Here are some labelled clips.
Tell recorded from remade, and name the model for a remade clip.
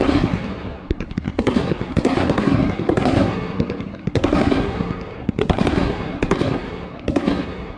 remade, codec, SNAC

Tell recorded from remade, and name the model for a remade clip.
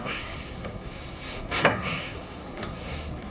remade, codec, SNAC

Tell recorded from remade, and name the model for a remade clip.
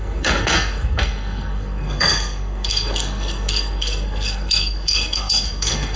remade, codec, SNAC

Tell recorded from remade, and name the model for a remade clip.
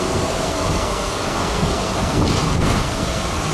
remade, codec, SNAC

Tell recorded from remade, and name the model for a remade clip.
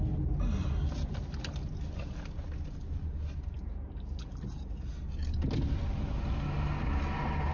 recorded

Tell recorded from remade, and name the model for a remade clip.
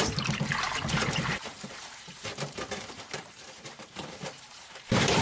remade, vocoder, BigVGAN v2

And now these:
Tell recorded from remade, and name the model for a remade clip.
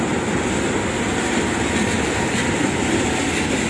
recorded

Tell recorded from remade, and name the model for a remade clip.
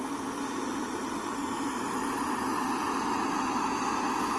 recorded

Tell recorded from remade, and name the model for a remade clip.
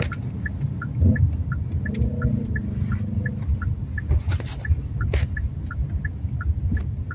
recorded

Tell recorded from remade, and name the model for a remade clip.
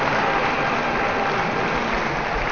recorded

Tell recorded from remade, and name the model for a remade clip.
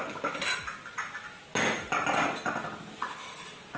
recorded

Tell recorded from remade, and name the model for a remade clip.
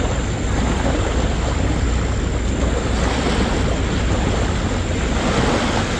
recorded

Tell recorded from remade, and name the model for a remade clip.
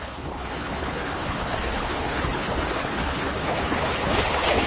remade, codec, HILCodec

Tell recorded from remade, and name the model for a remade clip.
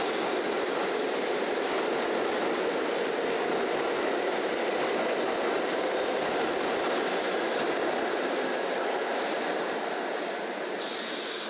recorded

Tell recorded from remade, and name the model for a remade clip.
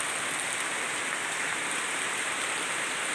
recorded